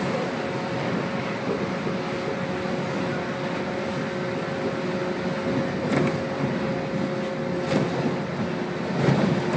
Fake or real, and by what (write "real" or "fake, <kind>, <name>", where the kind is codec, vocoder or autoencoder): real